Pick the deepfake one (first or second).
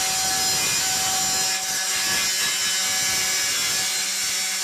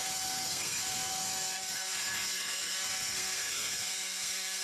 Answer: second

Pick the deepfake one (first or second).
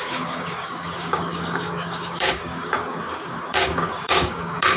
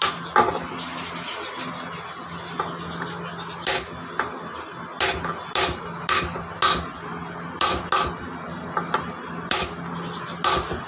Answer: first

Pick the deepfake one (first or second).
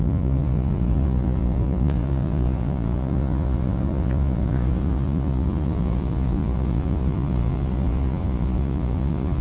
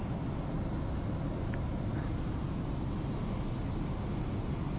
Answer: first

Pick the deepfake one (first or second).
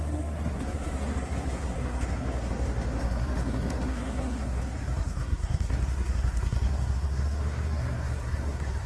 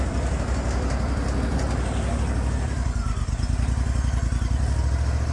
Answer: first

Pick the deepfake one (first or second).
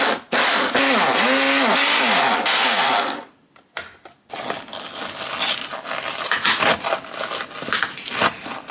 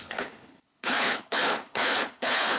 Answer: second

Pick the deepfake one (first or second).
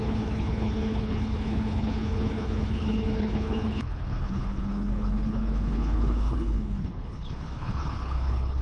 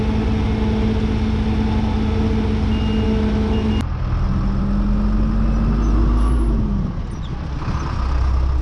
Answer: first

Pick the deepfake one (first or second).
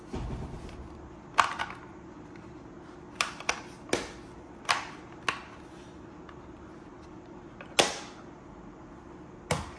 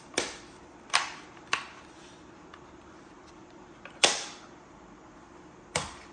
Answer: second